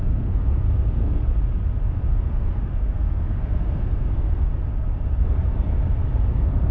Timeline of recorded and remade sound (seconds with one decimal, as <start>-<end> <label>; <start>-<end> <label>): 0.0-1.3 remade; 1.3-2.1 recorded; 2.1-4.5 remade; 4.5-5.1 recorded; 5.1-5.7 remade; 5.7-6.3 recorded; 6.3-6.7 remade